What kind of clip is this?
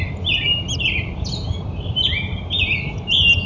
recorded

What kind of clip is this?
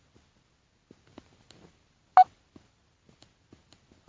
recorded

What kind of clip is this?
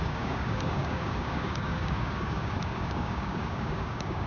remade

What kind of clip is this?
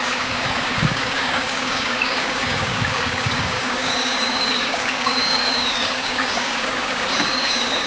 remade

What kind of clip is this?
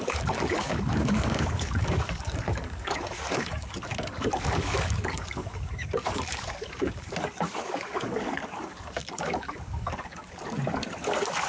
remade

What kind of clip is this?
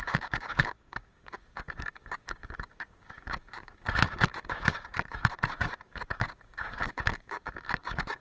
remade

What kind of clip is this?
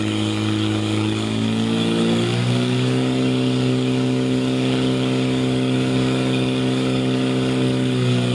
remade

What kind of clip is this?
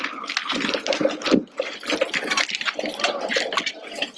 recorded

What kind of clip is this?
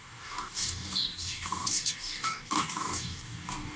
remade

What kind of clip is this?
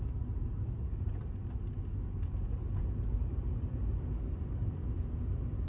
recorded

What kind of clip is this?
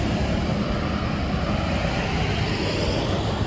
recorded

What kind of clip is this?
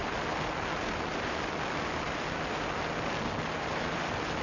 recorded